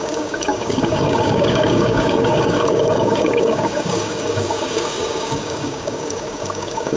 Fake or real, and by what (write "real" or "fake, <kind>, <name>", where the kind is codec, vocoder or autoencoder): fake, codec, DAC